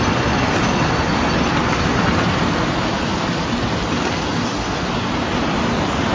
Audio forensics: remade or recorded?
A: recorded